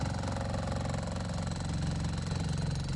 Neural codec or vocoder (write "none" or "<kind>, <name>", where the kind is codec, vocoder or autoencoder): none